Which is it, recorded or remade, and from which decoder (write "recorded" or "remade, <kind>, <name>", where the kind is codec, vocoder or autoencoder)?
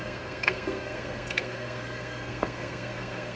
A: remade, codec, SNAC